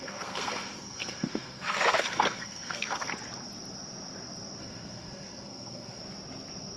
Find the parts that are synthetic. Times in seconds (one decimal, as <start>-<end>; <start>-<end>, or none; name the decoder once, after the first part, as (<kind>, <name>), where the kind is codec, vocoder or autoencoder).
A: 0.0-3.1 (codec, SNAC); 4.6-6.0